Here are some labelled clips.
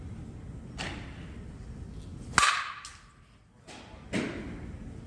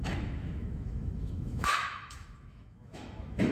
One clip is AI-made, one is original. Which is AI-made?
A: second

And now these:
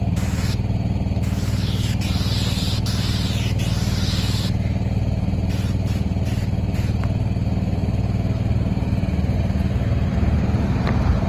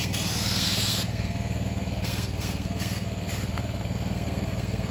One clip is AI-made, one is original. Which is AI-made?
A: second